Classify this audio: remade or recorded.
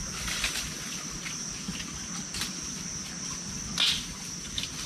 recorded